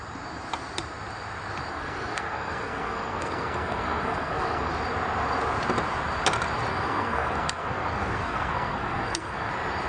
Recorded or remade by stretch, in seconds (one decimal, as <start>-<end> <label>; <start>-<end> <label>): 0.0-1.7 recorded; 1.7-4.7 remade; 4.7-6.7 recorded; 6.7-9.5 remade; 9.5-9.9 recorded